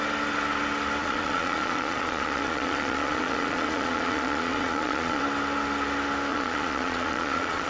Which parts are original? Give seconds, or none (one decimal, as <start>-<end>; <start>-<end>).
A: 0.0-1.0; 5.2-6.3